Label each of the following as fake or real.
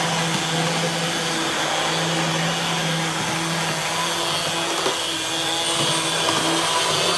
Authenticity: real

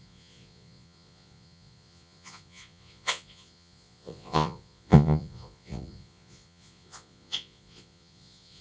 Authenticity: fake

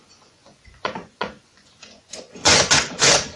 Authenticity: fake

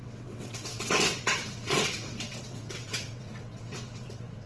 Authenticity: fake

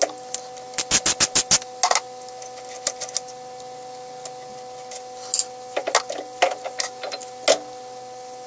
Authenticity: real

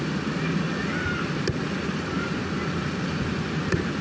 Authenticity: real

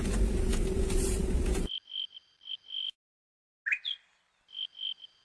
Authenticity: real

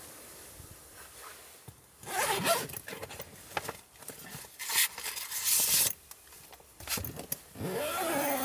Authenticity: real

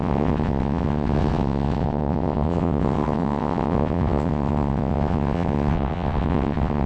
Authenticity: fake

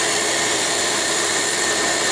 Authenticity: fake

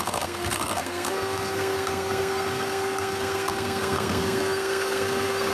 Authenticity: fake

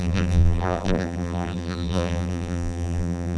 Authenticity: fake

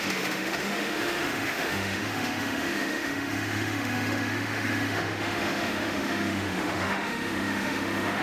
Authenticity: fake